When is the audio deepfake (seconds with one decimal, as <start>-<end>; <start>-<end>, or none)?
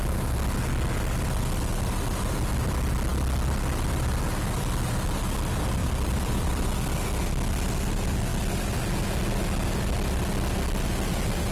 5.8-6.7